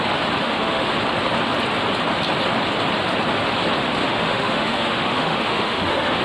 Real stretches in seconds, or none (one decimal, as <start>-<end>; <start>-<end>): 0.0-0.4; 0.9-4.0